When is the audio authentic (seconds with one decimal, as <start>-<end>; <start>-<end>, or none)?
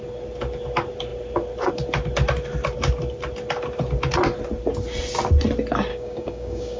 0.0-5.9